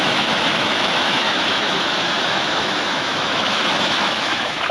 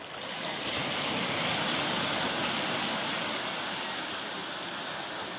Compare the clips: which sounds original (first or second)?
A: second